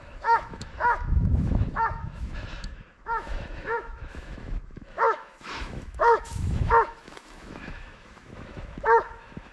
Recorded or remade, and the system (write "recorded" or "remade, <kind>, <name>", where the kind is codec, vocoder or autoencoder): remade, autoencoder, DAC-VAE